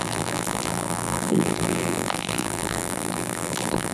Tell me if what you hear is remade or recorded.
remade